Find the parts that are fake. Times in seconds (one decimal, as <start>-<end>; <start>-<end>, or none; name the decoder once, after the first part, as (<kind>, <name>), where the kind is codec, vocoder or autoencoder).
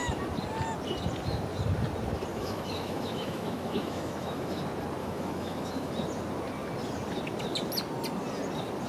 2.3-4.6 (autoencoder, DAC-VAE); 5.0-5.9